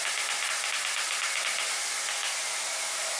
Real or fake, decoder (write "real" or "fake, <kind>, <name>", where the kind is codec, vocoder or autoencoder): real